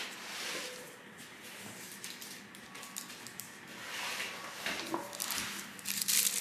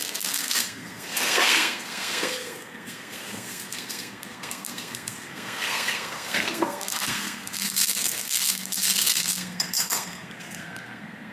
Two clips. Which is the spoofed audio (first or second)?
second